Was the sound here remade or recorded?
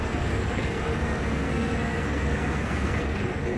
remade